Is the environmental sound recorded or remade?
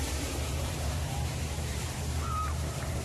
remade